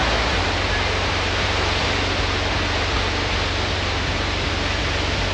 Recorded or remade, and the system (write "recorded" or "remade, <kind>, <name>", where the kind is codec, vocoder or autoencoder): recorded